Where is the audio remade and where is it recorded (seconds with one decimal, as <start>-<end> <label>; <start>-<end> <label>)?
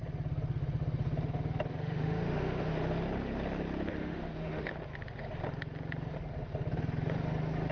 0.0-1.8 recorded; 1.8-2.7 remade; 2.7-3.9 recorded; 3.9-4.7 remade; 4.7-7.7 recorded